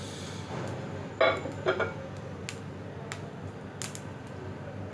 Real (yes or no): yes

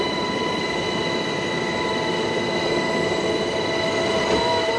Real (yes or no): yes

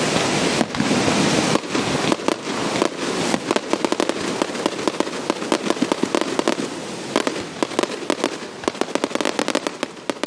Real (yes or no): yes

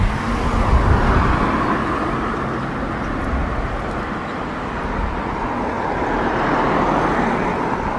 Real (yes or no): yes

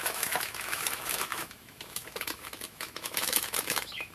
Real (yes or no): no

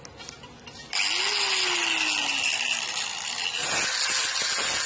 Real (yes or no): yes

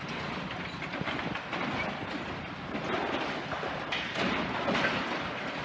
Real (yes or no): yes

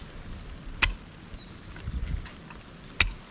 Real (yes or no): yes